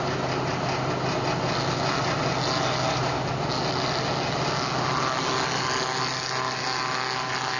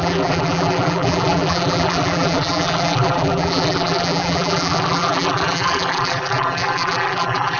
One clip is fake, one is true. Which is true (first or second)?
first